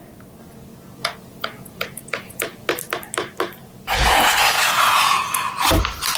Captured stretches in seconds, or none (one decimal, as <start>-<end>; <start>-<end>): 0.0-1.0; 2.7-3.6; 5.5-6.2